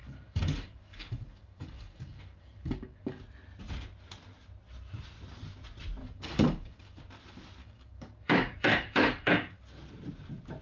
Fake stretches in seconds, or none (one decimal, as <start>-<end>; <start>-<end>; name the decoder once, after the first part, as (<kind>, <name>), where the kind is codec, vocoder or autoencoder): 0.0-3.2 (codec, DAC); 6.0-7.0; 7.6-9.6